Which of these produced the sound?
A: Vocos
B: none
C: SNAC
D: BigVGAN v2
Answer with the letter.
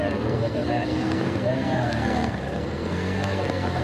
C